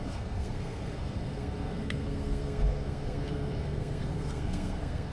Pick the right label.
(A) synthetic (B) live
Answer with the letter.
A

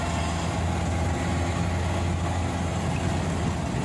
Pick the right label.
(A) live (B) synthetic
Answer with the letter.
A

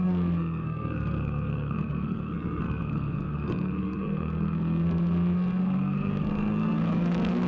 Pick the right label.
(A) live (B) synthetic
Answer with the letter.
B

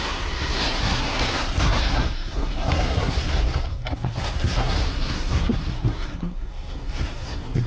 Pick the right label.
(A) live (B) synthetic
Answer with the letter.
B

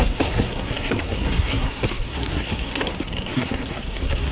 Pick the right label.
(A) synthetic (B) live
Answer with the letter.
A